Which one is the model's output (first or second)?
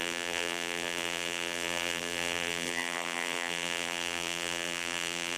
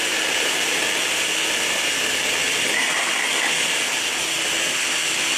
first